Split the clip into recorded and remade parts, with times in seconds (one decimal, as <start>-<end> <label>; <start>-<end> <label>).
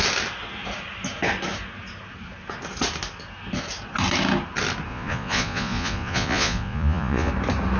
0.0-4.9 recorded; 4.9-7.3 remade; 7.3-7.8 recorded